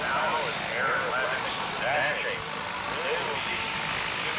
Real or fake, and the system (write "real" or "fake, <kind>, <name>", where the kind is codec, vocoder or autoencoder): real